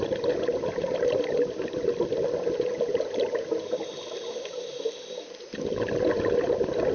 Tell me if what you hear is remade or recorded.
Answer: recorded